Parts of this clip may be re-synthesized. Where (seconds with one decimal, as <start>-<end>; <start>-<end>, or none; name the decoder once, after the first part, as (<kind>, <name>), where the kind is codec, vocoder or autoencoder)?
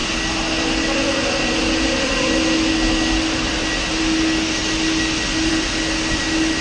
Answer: none